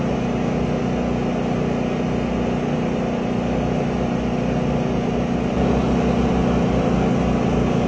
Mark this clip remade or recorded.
recorded